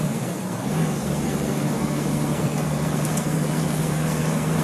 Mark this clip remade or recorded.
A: remade